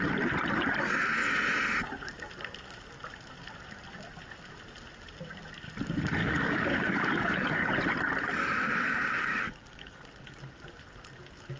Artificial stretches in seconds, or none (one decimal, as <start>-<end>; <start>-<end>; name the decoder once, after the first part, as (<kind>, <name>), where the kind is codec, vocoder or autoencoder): 6.2-7.7 (codec, DAC); 9.3-10.0